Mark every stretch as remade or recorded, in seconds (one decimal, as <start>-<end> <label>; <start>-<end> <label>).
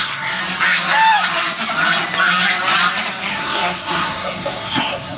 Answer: 0.0-0.4 remade; 0.4-3.3 recorded; 3.3-5.2 remade